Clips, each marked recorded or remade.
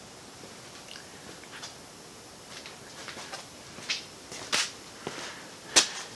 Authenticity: recorded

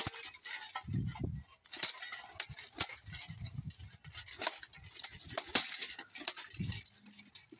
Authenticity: recorded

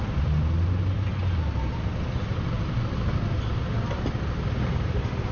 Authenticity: recorded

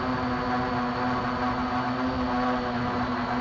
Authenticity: recorded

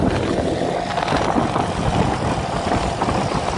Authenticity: recorded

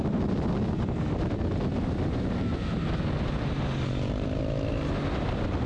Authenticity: recorded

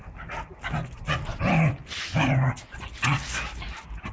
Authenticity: recorded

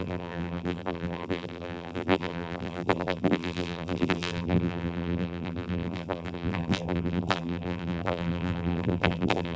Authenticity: remade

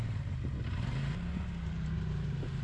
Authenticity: remade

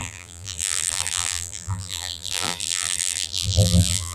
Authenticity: remade